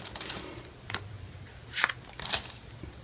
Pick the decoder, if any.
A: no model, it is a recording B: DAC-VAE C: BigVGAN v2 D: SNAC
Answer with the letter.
C